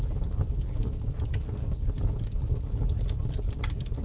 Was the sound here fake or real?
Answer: real